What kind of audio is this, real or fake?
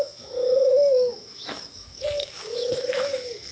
fake